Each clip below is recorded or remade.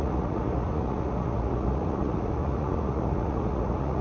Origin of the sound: remade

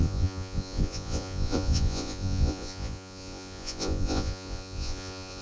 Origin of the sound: remade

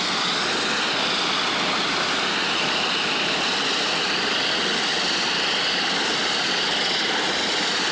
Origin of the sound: recorded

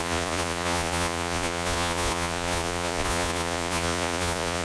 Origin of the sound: remade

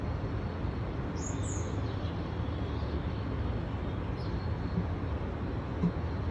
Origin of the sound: recorded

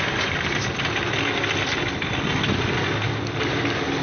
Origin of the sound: recorded